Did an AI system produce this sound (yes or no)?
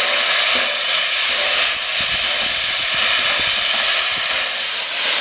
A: no